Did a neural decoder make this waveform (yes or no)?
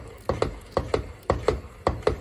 no